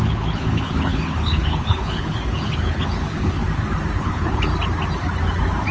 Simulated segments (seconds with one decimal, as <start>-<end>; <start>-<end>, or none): 0.0-3.4; 4.0-4.5